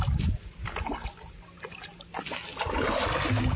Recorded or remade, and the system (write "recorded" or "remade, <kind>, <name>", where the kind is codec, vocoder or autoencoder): recorded